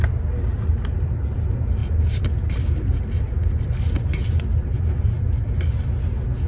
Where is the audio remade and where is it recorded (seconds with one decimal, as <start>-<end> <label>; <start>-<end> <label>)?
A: 0.0-6.5 recorded